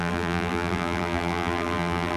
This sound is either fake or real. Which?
fake